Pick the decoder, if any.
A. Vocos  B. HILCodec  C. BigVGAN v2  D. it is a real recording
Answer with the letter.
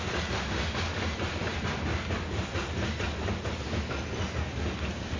D